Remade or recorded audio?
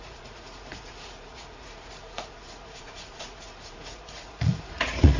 remade